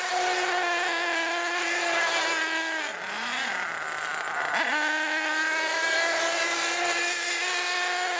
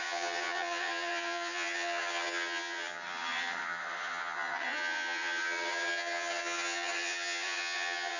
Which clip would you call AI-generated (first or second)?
second